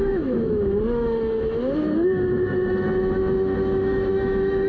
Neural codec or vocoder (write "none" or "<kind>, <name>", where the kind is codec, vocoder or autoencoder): autoencoder, DAC-VAE